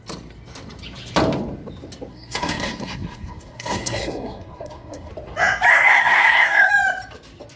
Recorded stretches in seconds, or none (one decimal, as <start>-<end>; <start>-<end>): 0.0-2.1; 5.1-5.7; 6.7-7.6